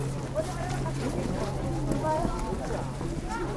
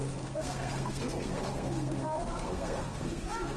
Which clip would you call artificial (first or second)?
second